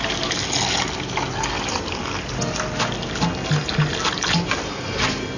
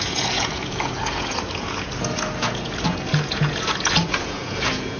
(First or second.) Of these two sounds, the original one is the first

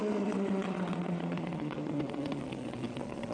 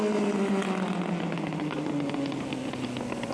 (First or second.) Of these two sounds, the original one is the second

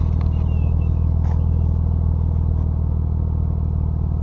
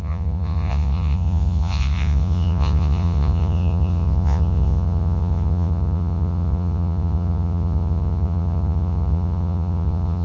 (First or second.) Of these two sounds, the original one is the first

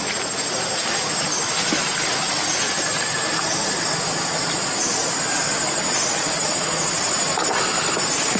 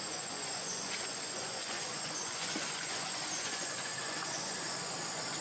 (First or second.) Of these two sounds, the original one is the first